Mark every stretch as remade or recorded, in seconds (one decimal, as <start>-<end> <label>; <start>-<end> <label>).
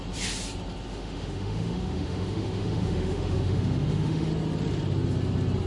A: 0.0-0.9 recorded; 0.9-4.3 remade; 4.3-5.7 recorded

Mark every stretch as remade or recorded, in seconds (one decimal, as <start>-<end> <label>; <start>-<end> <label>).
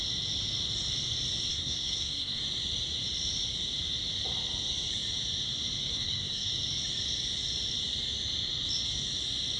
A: 0.0-1.5 recorded; 1.5-2.4 remade; 2.4-5.9 recorded; 5.9-6.5 remade; 6.5-9.6 recorded